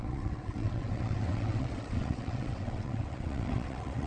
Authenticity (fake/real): fake